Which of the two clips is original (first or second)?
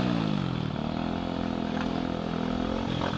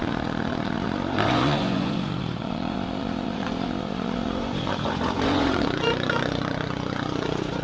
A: first